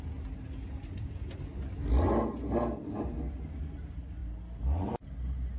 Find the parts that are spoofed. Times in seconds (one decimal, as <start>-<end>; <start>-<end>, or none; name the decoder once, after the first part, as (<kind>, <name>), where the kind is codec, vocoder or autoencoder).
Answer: none